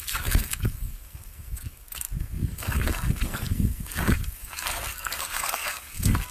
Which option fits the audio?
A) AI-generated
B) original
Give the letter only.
A